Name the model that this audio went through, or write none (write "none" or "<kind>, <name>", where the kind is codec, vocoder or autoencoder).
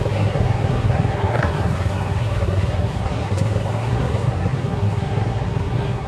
codec, SNAC